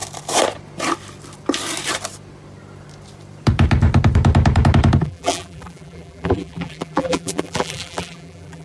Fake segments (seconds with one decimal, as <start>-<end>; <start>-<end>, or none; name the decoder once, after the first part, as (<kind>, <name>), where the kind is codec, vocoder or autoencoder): 5.0-8.6 (vocoder, BigVGAN v2)